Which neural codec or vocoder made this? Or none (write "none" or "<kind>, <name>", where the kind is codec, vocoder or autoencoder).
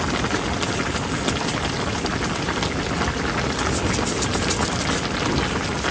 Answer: none